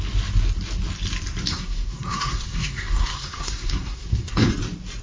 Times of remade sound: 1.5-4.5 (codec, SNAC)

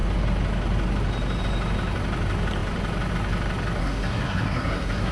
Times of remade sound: 3.8-5.1 (codec, SNAC)

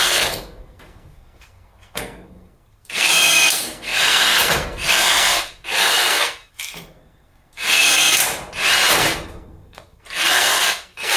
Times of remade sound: 0.0-8.2 (codec, SNAC); 8.9-11.2

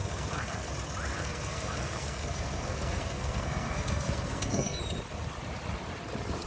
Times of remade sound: 0.0-0.7 (codec, SNAC); 1.1-4.8